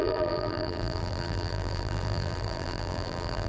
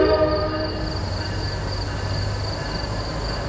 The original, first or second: second